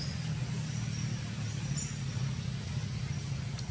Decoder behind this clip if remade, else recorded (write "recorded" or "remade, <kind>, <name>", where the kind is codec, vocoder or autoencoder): recorded